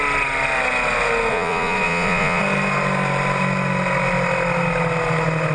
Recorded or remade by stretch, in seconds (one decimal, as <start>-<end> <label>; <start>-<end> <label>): 0.0-1.3 recorded; 1.3-2.4 remade; 2.4-5.5 recorded